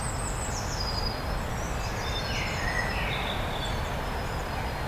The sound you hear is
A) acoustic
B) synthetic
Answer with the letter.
A